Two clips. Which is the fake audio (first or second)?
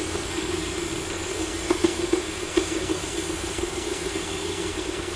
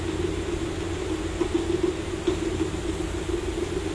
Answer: first